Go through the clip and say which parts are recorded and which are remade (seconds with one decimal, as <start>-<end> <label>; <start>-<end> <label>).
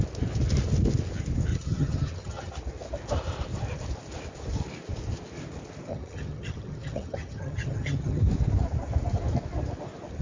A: 0.0-1.5 recorded; 1.5-2.5 remade; 2.5-5.9 recorded; 5.9-8.2 remade; 8.2-10.2 recorded